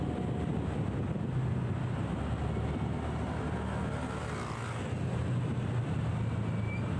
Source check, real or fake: real